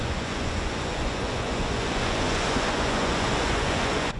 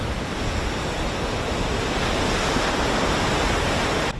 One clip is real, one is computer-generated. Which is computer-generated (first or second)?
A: first